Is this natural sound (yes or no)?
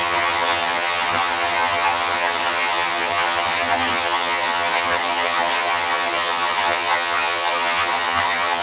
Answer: no